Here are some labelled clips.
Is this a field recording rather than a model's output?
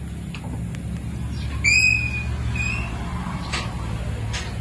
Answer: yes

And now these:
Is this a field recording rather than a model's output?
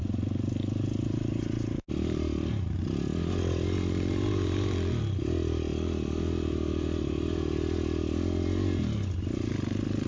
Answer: yes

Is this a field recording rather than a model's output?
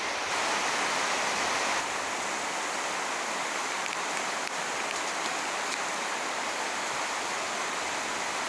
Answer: yes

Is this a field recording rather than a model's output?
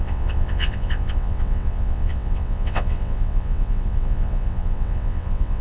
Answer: no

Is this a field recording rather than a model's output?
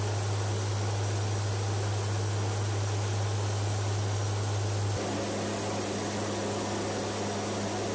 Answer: yes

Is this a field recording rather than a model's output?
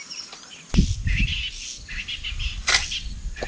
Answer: yes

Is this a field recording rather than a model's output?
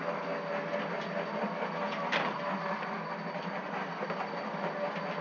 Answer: yes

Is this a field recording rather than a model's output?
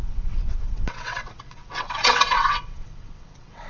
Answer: no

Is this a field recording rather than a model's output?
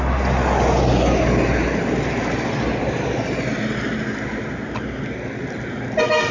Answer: yes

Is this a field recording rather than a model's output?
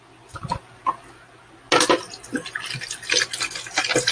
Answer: yes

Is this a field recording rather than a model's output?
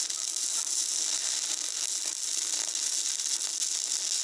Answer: yes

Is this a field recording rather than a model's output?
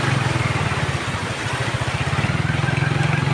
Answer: yes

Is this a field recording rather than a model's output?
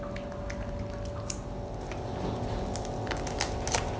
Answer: yes